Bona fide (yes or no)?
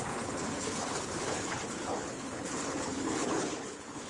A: no